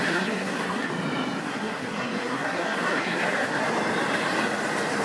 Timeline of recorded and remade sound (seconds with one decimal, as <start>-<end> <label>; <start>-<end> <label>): 0.0-0.9 remade; 0.9-1.4 recorded; 1.4-3.6 remade; 3.6-5.0 recorded